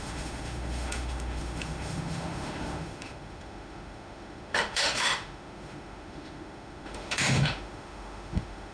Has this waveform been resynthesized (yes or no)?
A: yes